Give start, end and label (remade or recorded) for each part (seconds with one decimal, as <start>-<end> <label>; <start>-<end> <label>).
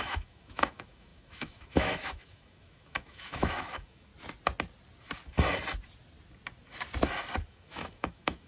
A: 0.0-4.1 remade; 4.1-7.5 recorded; 7.5-8.5 remade